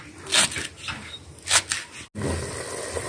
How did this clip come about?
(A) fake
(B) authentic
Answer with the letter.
B